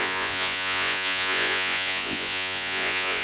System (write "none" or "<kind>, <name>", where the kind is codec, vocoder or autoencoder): vocoder, Vocos